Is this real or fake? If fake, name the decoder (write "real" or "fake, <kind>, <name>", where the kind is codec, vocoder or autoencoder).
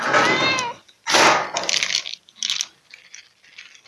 real